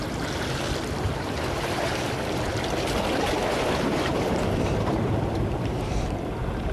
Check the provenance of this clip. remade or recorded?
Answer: recorded